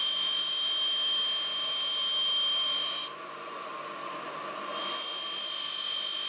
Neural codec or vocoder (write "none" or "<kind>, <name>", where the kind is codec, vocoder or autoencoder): none